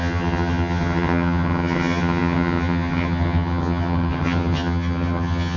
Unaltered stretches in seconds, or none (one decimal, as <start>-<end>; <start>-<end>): none